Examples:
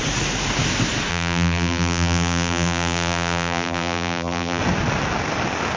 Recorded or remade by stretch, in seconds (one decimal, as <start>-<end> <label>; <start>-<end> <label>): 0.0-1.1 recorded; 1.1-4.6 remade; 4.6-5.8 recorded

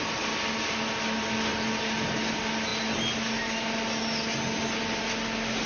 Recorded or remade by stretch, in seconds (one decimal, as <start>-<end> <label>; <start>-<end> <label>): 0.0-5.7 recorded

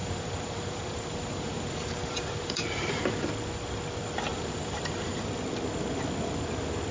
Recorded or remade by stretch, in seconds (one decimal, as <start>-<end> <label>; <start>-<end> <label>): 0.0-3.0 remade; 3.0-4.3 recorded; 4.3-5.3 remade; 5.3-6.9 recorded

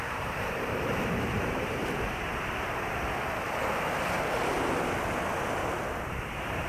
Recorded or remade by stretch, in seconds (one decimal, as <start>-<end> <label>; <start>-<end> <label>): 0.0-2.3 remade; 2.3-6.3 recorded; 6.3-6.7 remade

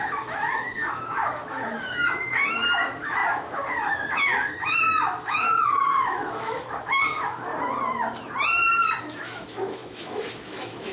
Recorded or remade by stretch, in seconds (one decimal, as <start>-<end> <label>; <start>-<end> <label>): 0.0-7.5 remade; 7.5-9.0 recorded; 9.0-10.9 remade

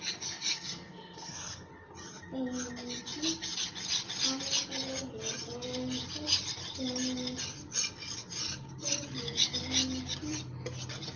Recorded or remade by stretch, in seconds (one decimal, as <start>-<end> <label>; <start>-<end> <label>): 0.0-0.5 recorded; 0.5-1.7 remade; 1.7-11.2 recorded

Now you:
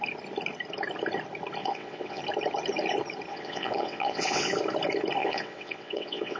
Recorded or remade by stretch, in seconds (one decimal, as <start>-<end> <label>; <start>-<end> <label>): 0.0-1.6 recorded; 1.6-2.2 remade; 2.2-3.3 recorded; 3.3-4.5 remade; 4.5-5.2 recorded; 5.2-6.4 remade

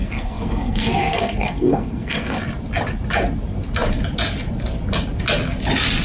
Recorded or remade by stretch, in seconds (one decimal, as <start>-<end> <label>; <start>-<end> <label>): 0.0-2.4 remade; 2.4-6.0 recorded